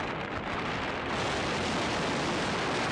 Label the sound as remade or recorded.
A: recorded